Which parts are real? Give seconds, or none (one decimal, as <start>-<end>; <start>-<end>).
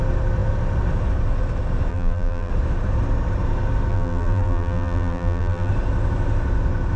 0.0-1.9; 2.5-3.9; 5.7-7.0